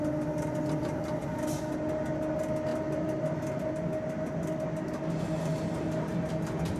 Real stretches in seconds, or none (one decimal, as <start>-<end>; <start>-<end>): 0.0-6.8